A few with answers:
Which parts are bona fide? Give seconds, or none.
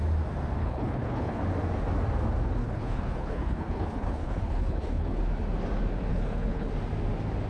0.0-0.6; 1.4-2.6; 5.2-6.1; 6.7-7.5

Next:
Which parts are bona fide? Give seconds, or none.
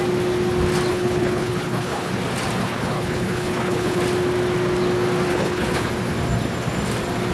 0.0-0.9; 2.1-2.6; 4.0-5.3; 5.9-7.3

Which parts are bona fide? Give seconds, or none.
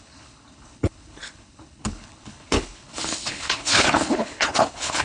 none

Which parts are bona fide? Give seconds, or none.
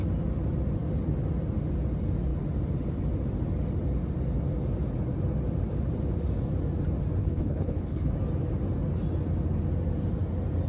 0.0-7.2; 8.1-10.7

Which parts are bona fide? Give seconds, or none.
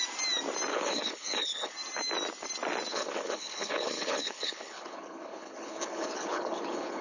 0.0-0.7; 1.7-2.9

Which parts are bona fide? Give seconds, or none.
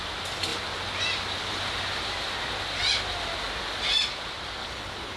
0.0-4.6